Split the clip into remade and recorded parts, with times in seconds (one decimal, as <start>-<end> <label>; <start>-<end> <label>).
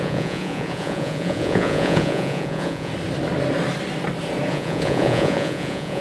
0.0-2.9 remade; 2.9-4.5 recorded; 4.5-6.0 remade